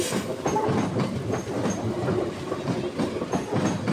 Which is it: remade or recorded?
recorded